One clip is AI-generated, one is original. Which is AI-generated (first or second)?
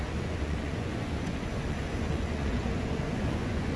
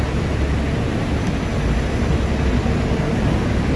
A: first